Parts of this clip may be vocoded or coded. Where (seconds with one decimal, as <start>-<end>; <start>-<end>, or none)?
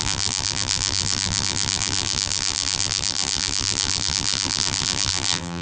0.0-5.6